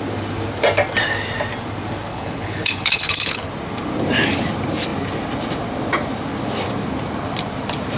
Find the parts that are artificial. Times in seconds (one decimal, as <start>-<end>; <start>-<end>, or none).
2.1-3.5